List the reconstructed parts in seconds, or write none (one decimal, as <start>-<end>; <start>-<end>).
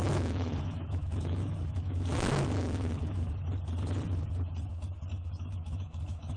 0.0-3.3; 5.1-6.4